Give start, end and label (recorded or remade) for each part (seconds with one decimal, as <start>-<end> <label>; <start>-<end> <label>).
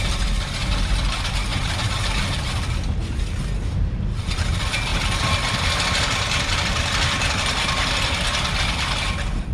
0.0-1.5 recorded; 1.5-2.5 remade; 2.5-9.5 recorded